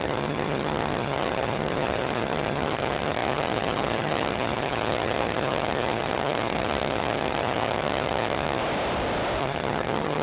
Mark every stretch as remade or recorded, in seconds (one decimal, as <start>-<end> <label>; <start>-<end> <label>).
0.0-8.6 remade; 8.6-9.4 recorded; 9.4-10.2 remade